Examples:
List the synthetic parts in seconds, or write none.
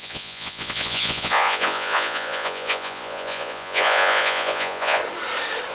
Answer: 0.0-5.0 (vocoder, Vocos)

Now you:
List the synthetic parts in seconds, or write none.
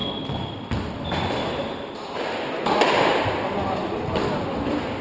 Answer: none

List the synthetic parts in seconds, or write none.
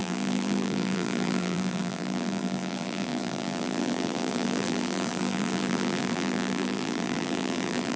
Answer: 0.0-8.0 (vocoder, BigVGAN v2)